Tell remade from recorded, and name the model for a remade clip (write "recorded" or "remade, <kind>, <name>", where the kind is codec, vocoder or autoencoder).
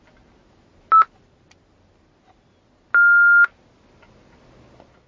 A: recorded